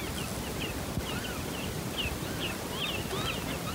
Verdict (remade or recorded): recorded